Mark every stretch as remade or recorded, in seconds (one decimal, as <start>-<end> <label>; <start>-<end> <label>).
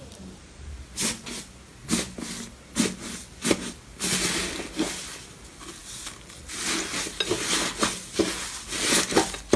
0.0-9.6 recorded